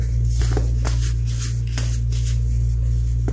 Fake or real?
real